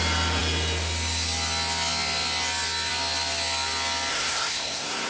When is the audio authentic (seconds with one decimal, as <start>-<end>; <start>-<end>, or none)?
0.0-4.1